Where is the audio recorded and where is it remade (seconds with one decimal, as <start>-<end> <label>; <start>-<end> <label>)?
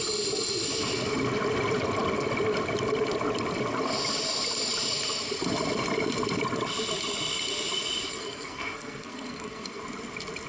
0.0-8.1 recorded; 8.1-9.8 remade; 9.8-10.5 recorded